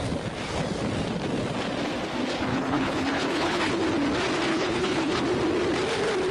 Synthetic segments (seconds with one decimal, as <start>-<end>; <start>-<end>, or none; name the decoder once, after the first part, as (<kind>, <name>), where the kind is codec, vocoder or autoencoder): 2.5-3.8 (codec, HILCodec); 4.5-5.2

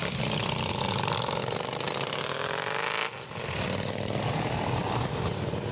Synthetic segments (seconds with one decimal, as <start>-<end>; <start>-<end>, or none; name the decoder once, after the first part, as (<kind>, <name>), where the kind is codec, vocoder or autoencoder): 0.0-5.7 (vocoder, BigVGAN v2)

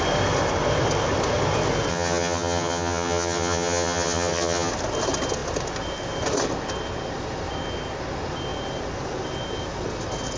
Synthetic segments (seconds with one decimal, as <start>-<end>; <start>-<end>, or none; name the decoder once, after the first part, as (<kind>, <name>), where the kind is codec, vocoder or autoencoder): 1.9-4.7 (vocoder, HiFi-GAN)

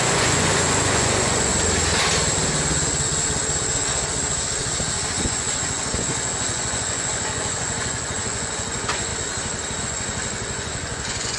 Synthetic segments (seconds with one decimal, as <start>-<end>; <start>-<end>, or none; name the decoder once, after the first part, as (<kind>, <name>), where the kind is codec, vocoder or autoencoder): 0.0-1.5 (vocoder, Vocos); 5.2-9.1; 9.8-11.4

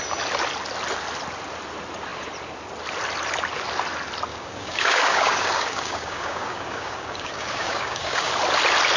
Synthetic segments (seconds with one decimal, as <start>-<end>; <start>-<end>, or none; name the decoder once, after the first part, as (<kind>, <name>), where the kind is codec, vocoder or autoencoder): 4.3-8.3 (codec, DAC)

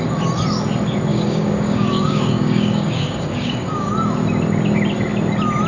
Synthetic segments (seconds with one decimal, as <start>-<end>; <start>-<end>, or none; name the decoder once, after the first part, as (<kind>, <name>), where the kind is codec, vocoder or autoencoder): 1.1-3.9 (codec, DAC)

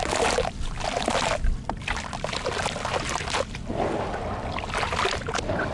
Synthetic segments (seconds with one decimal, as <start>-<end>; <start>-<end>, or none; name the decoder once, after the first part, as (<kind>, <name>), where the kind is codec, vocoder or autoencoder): none